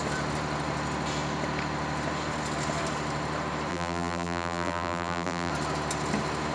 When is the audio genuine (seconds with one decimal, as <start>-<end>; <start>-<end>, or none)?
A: 0.0-3.7; 5.5-6.5